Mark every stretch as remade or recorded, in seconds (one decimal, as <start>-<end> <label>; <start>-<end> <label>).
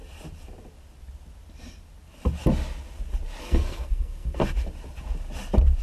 0.0-3.4 recorded; 3.4-4.4 remade; 4.4-5.8 recorded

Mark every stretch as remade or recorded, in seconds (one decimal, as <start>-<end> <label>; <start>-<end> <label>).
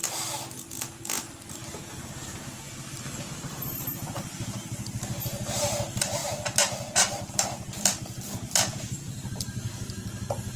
0.0-3.3 recorded; 3.3-10.6 remade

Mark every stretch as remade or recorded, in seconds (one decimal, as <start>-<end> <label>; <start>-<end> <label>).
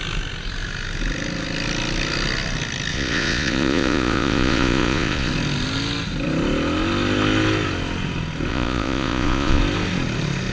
0.0-2.9 recorded; 2.9-5.3 remade; 5.3-8.5 recorded; 8.5-9.6 remade; 9.6-10.5 recorded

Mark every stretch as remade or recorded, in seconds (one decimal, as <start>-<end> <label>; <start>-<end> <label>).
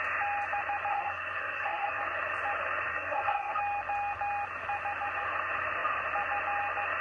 0.0-0.9 recorded; 0.9-2.0 remade; 2.0-2.9 recorded; 2.9-3.6 remade; 3.6-7.0 recorded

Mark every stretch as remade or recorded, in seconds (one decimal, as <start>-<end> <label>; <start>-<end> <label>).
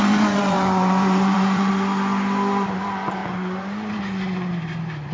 0.0-1.7 remade; 1.7-3.2 recorded; 3.2-4.0 remade; 4.0-5.1 recorded